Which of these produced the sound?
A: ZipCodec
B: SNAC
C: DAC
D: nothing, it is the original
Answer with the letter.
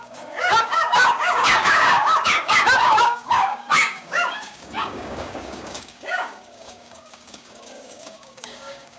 C